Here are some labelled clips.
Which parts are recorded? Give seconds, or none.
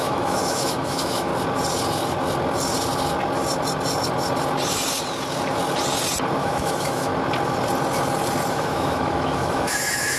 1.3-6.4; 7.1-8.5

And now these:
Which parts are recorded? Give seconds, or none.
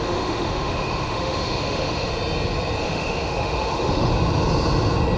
2.1-2.8; 4.1-5.2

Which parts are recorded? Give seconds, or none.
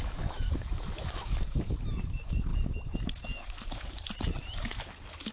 none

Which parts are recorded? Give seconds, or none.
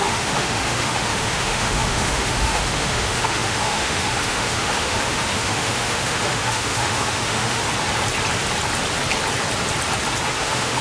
7.6-10.4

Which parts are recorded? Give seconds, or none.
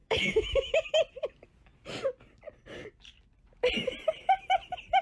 0.9-5.0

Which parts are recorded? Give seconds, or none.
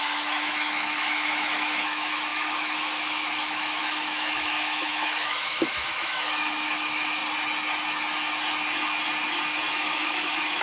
7.2-9.7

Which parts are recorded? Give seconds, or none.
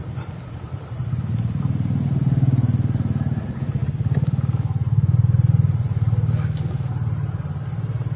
0.0-8.2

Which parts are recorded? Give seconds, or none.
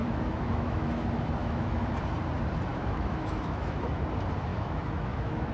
1.0-1.4; 1.9-2.7; 4.0-4.5